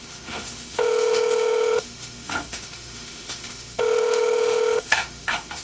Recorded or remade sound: remade